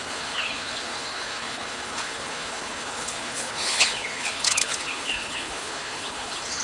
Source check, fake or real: fake